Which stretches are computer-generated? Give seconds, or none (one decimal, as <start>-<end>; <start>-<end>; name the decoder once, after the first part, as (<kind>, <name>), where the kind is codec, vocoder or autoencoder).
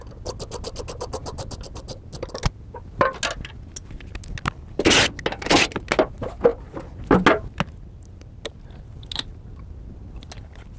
none